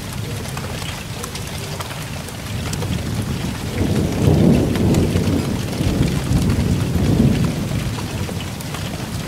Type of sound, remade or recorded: recorded